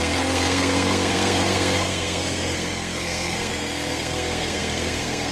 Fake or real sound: fake